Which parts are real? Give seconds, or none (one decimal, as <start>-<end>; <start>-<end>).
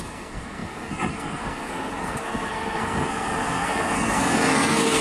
none